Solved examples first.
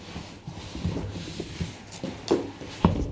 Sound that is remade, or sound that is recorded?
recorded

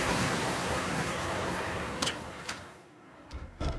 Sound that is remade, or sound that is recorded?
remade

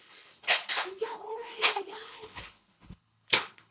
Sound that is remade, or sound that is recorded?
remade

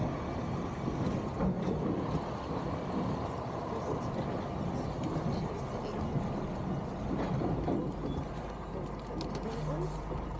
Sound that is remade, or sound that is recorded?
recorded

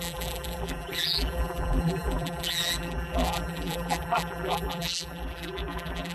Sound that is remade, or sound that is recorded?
remade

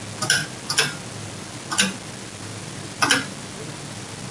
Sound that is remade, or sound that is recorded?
recorded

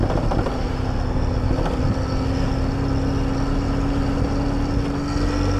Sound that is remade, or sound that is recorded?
recorded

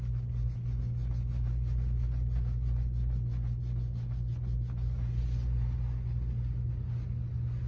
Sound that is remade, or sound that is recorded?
recorded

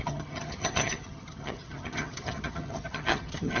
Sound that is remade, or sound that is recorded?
remade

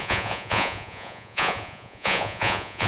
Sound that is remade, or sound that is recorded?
remade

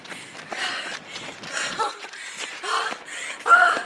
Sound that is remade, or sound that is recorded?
recorded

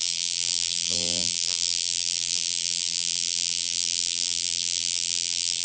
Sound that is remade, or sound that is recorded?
remade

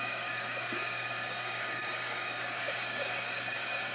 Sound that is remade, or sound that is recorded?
remade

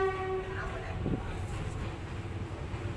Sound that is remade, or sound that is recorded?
recorded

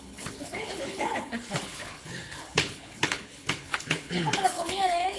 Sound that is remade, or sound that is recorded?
remade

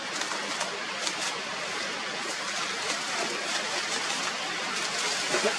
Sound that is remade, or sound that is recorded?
recorded